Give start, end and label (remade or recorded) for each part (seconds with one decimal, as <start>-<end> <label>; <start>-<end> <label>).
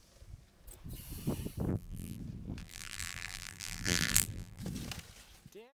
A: 0.0-1.7 recorded; 1.7-2.2 remade; 2.2-2.6 recorded; 2.6-4.6 remade; 4.6-5.8 recorded